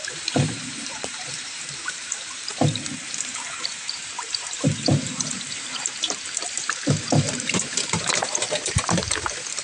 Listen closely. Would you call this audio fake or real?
fake